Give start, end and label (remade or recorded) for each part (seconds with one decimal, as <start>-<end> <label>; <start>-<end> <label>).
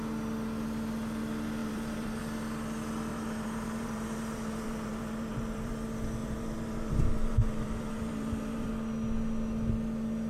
0.0-1.6 recorded; 1.6-2.2 remade; 2.2-3.1 recorded; 3.1-5.7 remade; 5.7-6.2 recorded; 6.2-8.7 remade; 8.7-10.3 recorded